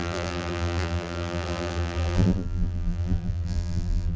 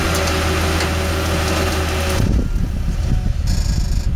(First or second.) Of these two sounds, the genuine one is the second